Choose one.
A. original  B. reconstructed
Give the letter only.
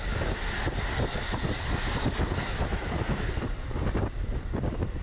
B